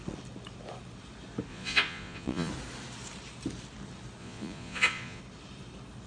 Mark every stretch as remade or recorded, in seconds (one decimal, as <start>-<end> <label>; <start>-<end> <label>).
0.0-1.5 recorded; 1.5-2.5 remade; 2.5-4.2 recorded; 4.2-5.2 remade; 5.2-6.1 recorded